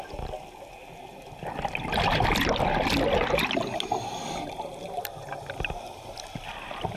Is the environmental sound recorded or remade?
recorded